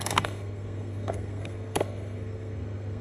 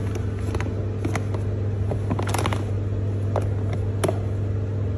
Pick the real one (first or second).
second